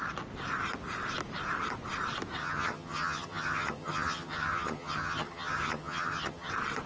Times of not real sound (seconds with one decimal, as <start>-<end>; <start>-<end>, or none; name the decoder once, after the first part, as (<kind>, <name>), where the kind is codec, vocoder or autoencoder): 2.4-6.5 (vocoder, HiFi-GAN)